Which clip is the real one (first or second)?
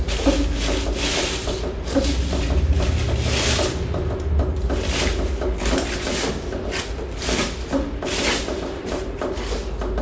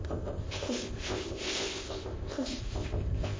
first